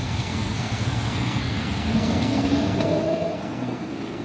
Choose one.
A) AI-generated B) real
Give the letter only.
A